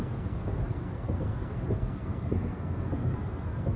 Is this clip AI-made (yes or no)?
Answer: yes